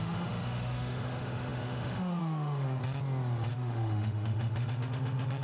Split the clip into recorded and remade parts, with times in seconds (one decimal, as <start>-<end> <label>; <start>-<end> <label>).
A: 0.0-2.8 remade; 2.8-3.5 recorded; 3.5-5.4 remade